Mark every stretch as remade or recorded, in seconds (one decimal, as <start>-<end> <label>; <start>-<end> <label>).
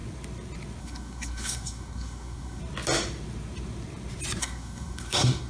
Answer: 0.0-0.8 recorded; 0.8-2.6 remade; 2.6-4.4 recorded; 4.4-5.5 remade